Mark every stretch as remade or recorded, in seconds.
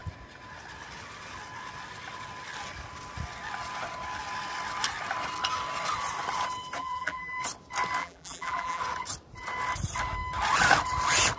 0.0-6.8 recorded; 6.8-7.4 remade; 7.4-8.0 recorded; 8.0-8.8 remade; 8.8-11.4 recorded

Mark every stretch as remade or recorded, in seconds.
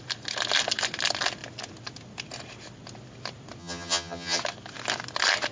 0.0-3.6 recorded; 3.6-4.4 remade; 4.4-5.5 recorded